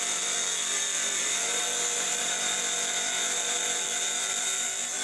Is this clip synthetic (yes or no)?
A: yes